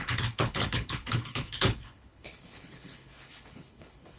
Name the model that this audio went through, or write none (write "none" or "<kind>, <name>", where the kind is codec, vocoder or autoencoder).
codec, HILCodec